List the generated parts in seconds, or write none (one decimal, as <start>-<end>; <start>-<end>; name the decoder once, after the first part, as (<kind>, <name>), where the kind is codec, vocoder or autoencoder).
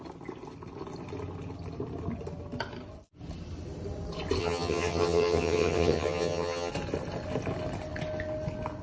4.4-6.7 (vocoder, HiFi-GAN)